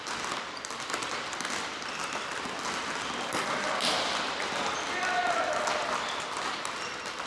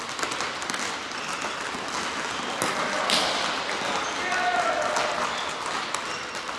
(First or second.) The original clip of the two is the second